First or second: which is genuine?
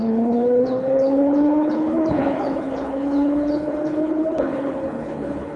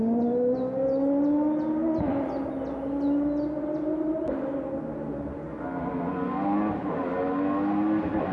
second